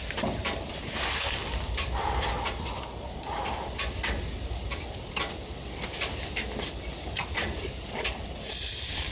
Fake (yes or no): no